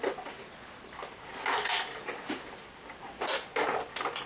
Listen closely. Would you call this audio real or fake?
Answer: real